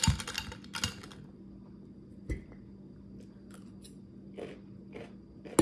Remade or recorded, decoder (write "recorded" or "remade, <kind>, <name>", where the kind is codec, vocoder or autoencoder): recorded